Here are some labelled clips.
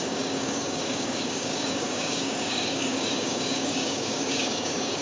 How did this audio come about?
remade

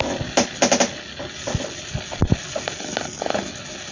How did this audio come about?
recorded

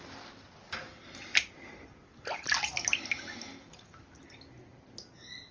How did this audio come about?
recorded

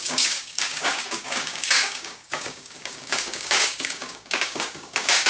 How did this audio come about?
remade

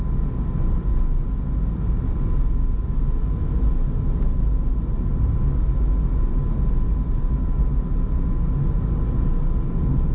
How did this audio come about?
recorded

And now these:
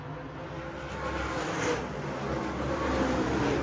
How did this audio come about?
recorded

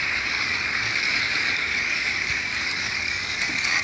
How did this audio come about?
remade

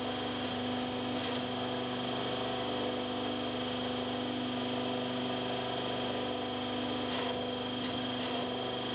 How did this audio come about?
recorded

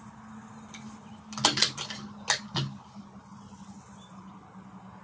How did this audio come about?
recorded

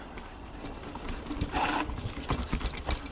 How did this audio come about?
recorded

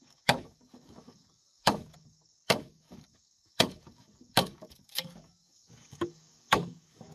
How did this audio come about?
remade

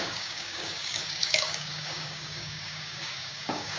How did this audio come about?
remade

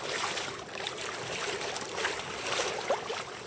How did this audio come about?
recorded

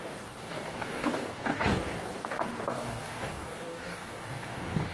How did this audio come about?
remade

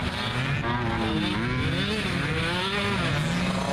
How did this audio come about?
recorded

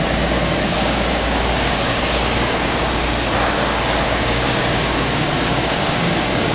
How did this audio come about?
remade